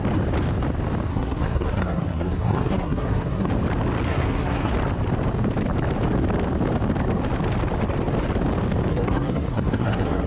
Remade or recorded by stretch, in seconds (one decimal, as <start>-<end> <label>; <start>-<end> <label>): 0.0-1.1 recorded; 1.1-3.5 remade; 3.5-4.1 recorded; 4.1-4.7 remade; 4.7-8.9 recorded; 8.9-10.3 remade